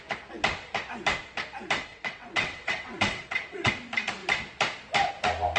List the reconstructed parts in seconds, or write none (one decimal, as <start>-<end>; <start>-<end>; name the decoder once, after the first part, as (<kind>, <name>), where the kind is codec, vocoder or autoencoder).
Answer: 1.9-3.7 (vocoder, WaveNeXt)